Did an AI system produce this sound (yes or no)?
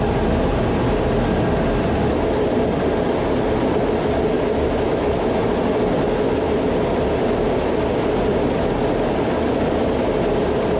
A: no